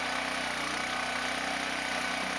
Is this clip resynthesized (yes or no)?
no